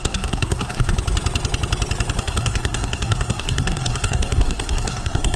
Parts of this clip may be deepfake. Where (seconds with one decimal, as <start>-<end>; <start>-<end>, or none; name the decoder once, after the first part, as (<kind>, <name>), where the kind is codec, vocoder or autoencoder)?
0.0-0.9 (codec, SNAC); 2.2-5.4